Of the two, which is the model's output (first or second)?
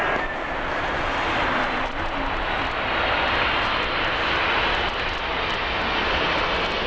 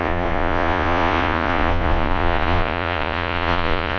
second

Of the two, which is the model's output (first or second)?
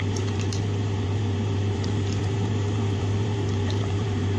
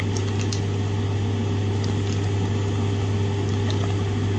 first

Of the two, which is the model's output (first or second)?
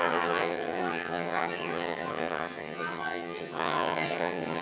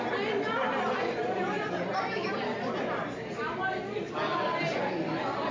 first